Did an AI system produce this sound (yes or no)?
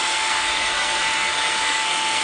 yes